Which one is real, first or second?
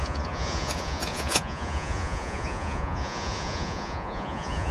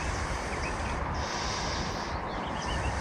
second